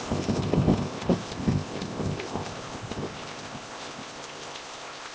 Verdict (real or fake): fake